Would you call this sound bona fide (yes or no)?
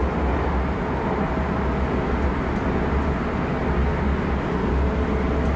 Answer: yes